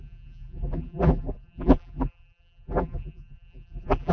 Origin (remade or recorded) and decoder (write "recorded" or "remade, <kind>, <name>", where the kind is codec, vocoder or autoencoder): remade, vocoder, BigVGAN v2